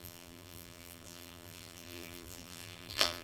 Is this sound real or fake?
fake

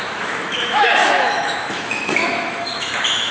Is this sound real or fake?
fake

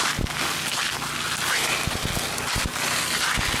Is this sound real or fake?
real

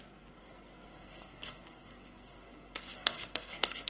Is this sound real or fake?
fake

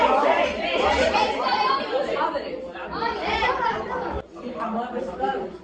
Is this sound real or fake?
fake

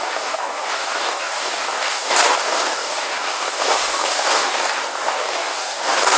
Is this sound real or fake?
fake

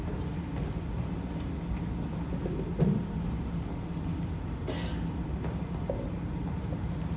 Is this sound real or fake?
real